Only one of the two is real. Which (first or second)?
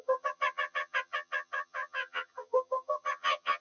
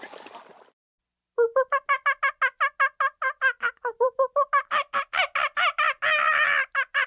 second